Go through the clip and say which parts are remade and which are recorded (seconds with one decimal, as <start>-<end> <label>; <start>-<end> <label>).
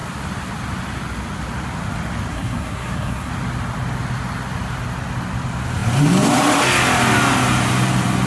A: 0.0-2.3 recorded; 2.3-3.3 remade; 3.3-8.3 recorded